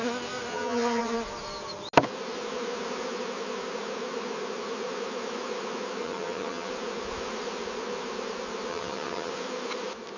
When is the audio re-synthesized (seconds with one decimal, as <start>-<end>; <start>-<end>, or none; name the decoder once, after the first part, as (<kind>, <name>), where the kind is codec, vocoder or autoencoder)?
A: 0.5-1.0 (vocoder, HiFi-GAN); 6.0-6.7; 8.7-9.3